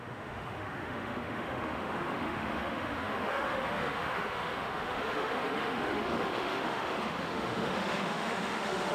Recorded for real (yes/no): no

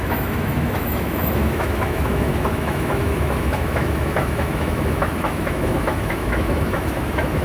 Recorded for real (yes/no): no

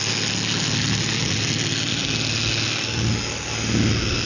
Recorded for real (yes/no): yes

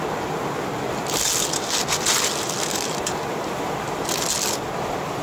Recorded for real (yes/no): yes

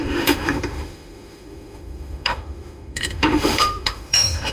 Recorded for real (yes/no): no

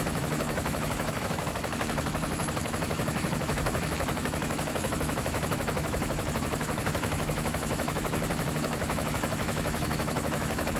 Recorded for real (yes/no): no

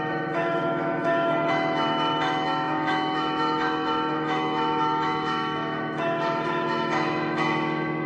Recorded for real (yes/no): no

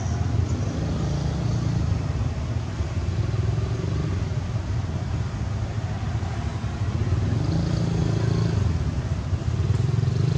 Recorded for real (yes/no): yes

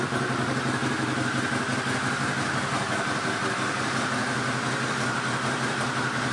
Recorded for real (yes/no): yes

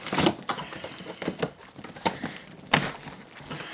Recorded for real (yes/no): yes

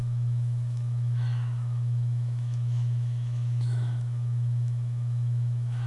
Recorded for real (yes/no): no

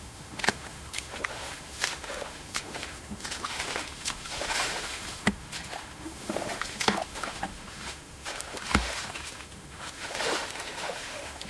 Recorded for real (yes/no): no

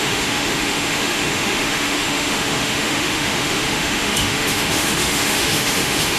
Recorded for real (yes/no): no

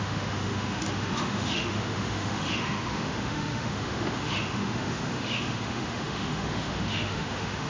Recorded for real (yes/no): no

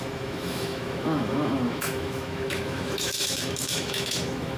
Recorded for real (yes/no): no